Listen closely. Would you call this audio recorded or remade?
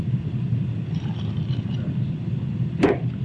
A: remade